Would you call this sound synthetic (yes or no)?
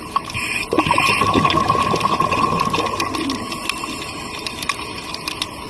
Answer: no